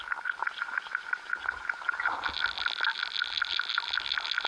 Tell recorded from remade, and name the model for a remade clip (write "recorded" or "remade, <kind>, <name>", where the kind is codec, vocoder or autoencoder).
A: recorded